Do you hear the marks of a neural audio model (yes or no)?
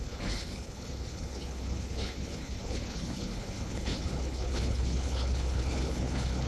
yes